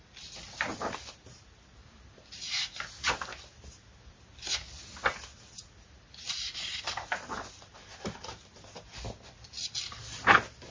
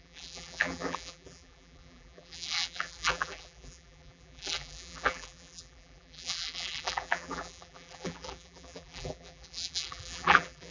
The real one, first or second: first